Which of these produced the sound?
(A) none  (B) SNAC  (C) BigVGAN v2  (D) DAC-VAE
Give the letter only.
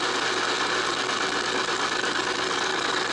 A